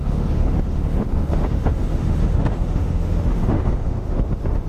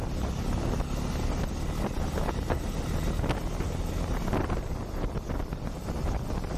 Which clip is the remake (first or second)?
first